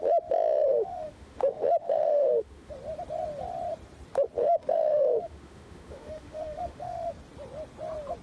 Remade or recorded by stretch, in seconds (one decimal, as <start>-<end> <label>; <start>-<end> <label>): 0.0-0.7 recorded; 0.7-2.7 remade; 2.7-4.4 recorded; 4.4-7.1 remade; 7.1-8.2 recorded